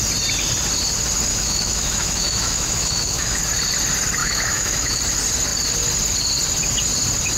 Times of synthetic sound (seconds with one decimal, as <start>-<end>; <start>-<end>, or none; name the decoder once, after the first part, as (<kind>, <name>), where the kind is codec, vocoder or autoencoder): 1.3-3.4 (autoencoder, DAC-VAE); 4.2-5.0